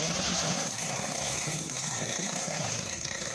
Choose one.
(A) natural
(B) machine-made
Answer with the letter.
B